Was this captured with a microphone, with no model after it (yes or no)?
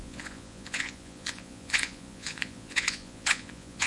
no